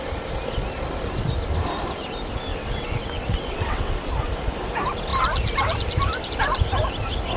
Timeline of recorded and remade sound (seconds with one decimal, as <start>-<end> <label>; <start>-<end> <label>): 0.0-2.5 recorded; 2.5-4.1 remade; 4.1-7.4 recorded

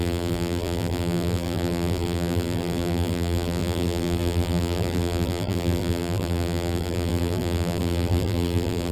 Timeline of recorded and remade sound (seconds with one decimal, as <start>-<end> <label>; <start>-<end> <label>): 0.0-8.9 remade

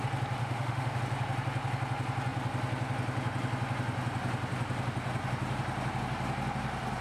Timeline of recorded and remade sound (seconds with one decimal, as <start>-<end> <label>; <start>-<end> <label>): 0.0-0.4 recorded; 0.4-1.0 remade; 1.0-7.0 recorded

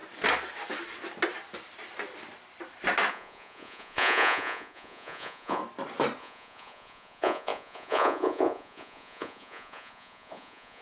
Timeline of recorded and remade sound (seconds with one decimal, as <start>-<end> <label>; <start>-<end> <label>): 0.0-3.1 recorded; 3.1-5.6 remade; 5.6-6.2 recorded; 6.2-10.8 remade

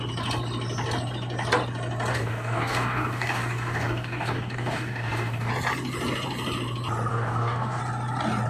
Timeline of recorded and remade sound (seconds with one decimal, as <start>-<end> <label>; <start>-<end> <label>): 0.0-2.1 recorded; 2.1-5.5 remade; 5.5-7.1 recorded; 7.1-7.8 remade; 7.8-8.5 recorded

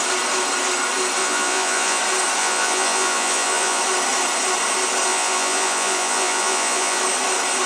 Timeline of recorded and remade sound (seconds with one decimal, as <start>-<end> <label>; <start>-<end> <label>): 0.0-1.2 recorded; 1.2-2.0 remade; 2.0-2.4 recorded; 2.4-3.8 remade; 3.8-5.1 recorded; 5.1-7.0 remade; 7.0-7.7 recorded